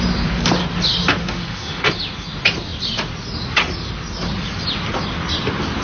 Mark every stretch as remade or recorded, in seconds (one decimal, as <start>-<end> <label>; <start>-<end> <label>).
0.0-1.2 recorded; 1.2-1.9 remade; 1.9-5.8 recorded